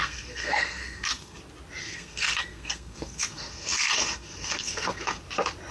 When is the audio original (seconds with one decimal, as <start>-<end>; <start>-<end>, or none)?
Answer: 1.4-1.8; 5.2-5.7